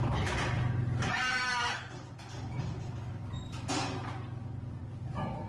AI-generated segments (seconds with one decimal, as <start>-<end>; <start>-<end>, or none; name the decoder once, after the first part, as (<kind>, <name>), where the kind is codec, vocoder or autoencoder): none